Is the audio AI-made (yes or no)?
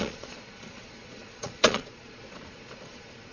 yes